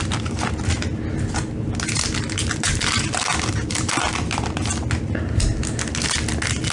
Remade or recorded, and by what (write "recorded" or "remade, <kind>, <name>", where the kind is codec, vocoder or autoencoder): recorded